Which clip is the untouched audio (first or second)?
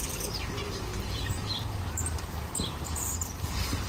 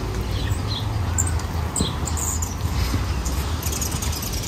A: second